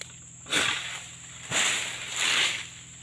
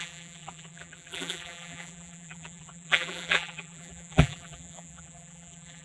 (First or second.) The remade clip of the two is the second